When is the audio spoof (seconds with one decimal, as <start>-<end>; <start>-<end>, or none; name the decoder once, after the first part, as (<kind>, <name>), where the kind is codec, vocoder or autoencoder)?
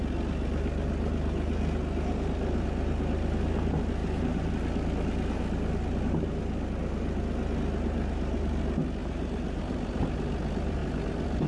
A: 4.0-4.5 (vocoder, BigVGAN v2); 9.0-9.6